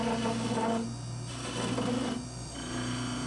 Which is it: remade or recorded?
recorded